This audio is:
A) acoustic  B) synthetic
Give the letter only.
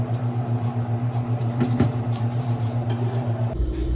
B